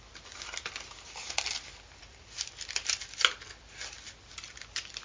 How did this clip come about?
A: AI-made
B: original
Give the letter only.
B